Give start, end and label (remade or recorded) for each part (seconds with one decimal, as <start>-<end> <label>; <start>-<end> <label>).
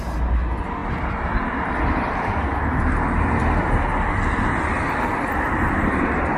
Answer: 0.0-6.4 recorded